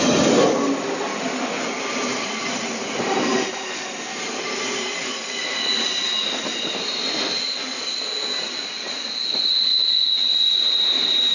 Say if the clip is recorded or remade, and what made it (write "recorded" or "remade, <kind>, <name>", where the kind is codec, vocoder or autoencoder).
recorded